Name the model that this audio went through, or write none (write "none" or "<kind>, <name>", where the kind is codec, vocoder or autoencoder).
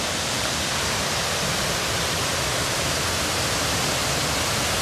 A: none